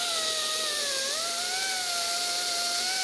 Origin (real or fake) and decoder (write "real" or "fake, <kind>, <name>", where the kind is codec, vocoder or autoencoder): real